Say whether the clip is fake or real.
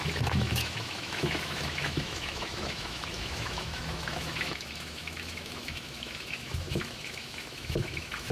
fake